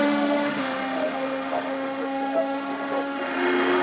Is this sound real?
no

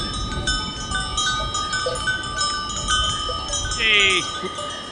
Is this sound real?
yes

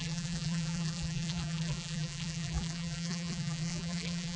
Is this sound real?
no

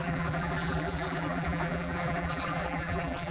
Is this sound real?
no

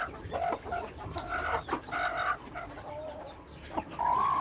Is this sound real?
yes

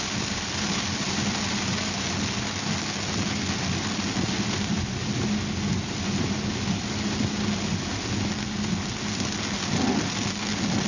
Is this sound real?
yes